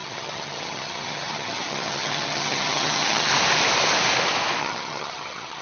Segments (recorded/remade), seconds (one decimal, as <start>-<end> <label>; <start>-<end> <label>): 0.0-3.3 remade; 3.3-4.6 recorded; 4.6-5.6 remade